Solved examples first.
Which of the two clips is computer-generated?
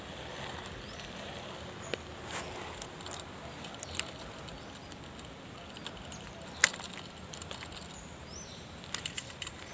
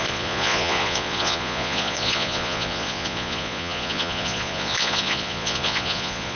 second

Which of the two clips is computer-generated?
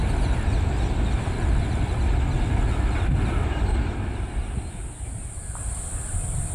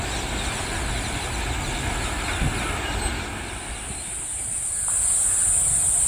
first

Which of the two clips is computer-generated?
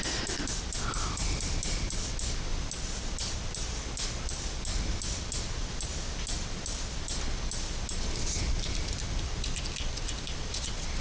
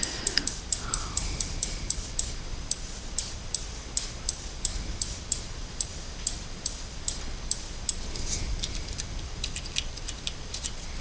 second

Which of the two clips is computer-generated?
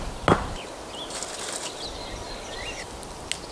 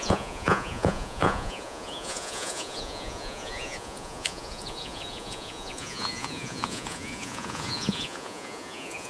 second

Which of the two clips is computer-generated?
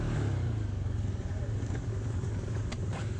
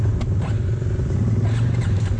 first